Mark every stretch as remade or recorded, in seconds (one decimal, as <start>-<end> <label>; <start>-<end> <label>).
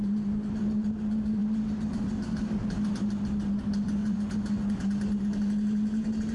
0.0-4.0 recorded; 4.0-4.8 remade; 4.8-6.3 recorded